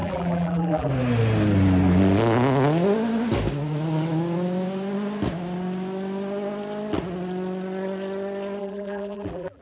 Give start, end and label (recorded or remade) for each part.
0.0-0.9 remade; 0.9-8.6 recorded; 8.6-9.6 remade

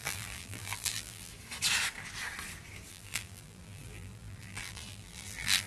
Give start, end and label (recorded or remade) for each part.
0.0-1.3 remade; 1.3-2.9 recorded; 2.9-5.7 remade

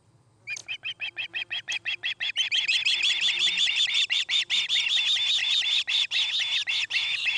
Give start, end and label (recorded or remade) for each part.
0.0-0.6 recorded; 0.6-5.0 remade; 5.0-5.4 recorded; 5.4-6.3 remade; 6.3-7.4 recorded

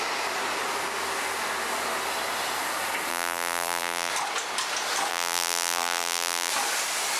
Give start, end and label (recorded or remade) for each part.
0.0-3.1 recorded; 3.1-4.1 remade; 4.1-5.1 recorded; 5.1-6.5 remade; 6.5-7.2 recorded